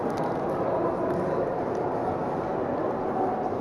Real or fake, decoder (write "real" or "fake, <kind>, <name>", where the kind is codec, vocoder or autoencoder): real